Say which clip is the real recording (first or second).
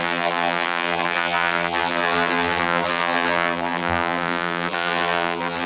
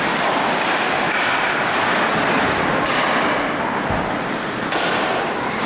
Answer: second